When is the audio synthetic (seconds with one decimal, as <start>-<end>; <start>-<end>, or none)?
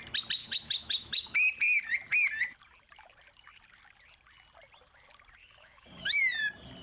0.4-1.4; 5.4-6.2